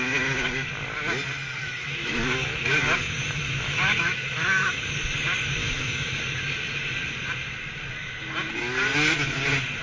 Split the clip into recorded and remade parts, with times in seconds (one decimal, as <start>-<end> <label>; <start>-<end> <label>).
0.0-1.6 recorded; 1.6-4.8 remade; 4.8-5.6 recorded; 5.6-6.2 remade; 6.2-9.8 recorded